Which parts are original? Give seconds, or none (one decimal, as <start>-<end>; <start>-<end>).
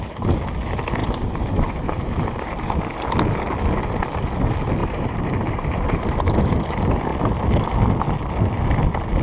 0.0-1.0; 2.8-4.8; 6.5-9.2